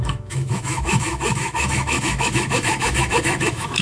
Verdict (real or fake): fake